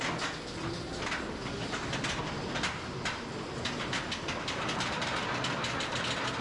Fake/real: real